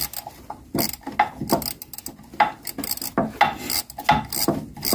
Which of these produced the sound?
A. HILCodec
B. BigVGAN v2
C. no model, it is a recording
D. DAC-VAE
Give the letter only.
C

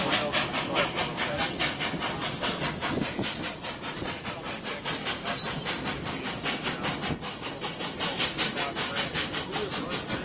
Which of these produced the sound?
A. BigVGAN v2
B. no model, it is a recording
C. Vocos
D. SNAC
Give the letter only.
B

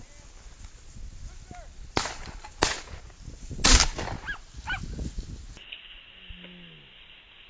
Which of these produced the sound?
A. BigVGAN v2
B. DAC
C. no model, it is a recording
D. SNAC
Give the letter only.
C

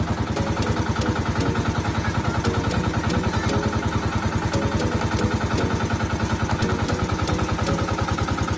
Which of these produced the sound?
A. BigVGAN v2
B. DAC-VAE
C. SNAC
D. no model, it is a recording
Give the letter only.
D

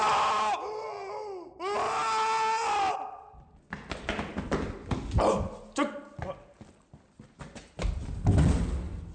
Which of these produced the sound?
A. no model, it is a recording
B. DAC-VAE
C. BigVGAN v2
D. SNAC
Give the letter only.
A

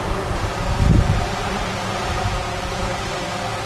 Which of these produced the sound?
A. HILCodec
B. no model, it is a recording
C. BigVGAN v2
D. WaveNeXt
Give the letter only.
C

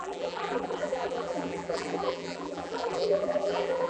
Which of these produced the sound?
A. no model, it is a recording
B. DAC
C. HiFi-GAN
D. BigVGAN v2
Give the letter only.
D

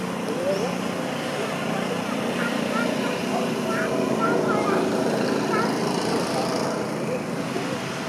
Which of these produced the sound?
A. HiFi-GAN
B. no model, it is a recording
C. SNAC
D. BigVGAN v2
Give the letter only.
D